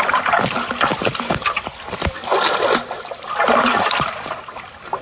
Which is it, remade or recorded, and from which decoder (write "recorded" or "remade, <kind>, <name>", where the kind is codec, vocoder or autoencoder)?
remade, vocoder, BigVGAN v2